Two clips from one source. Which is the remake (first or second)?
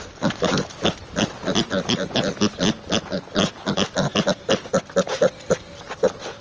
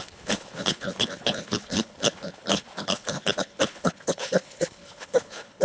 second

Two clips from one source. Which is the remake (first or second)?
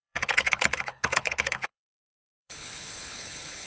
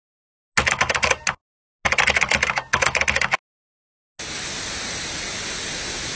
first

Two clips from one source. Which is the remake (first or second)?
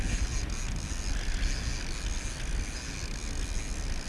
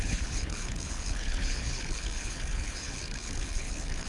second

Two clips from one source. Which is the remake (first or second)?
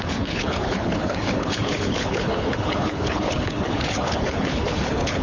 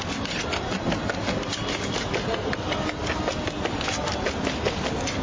first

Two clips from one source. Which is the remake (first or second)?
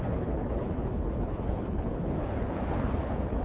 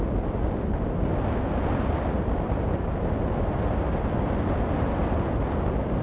first